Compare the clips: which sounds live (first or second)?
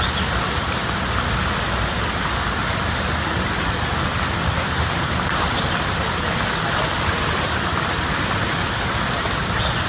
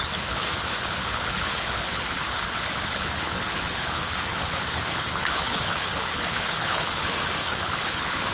first